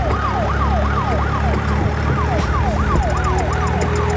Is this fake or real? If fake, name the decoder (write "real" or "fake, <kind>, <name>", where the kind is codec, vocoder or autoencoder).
real